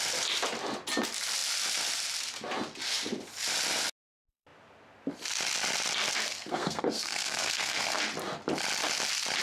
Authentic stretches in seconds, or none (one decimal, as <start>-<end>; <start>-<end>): 0.0-6.3; 8.0-9.4